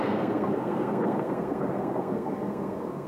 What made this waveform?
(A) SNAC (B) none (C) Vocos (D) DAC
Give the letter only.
A